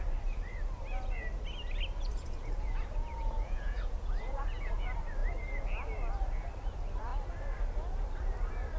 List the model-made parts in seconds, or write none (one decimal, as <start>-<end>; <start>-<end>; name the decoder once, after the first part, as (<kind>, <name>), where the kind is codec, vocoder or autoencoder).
2.1-4.7 (vocoder, Vocos)